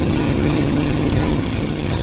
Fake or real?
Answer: fake